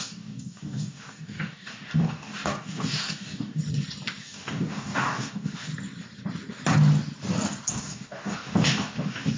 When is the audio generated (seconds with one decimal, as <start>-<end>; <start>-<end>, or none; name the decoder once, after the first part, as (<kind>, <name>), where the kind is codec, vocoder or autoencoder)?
0.0-3.6 (codec, DAC); 4.2-5.7; 7.7-9.4